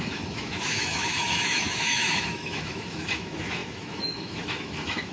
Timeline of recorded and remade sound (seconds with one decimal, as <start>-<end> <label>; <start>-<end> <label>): 0.0-5.1 remade